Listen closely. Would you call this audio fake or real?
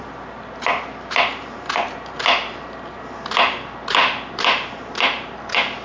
real